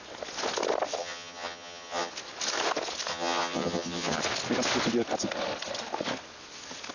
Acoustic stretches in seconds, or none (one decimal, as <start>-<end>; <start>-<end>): 0.0-1.0; 2.1-3.1; 4.2-6.9